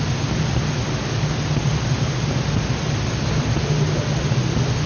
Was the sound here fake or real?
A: real